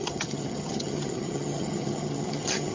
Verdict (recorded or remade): remade